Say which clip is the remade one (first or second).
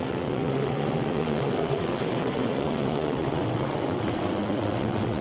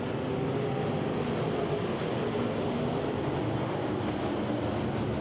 first